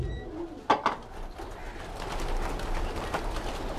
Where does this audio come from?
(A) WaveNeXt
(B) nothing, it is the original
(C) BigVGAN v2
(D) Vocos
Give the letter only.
B